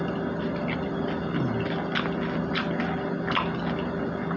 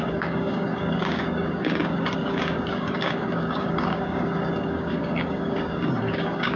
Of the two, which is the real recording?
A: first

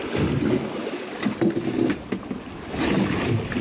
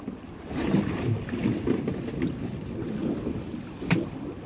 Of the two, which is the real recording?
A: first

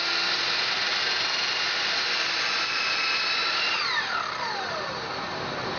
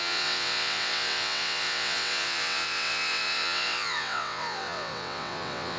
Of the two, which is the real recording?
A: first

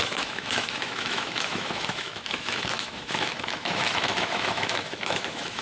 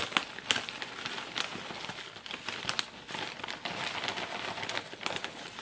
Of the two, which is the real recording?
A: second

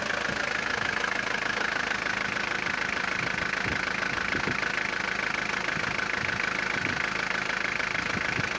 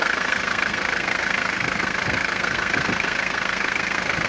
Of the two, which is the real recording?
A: first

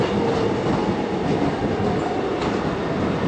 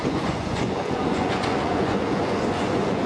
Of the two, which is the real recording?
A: first